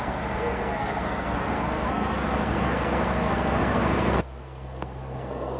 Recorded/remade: remade